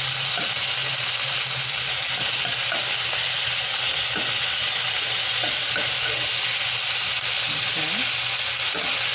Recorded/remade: recorded